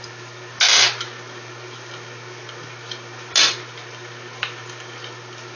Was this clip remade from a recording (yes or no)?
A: no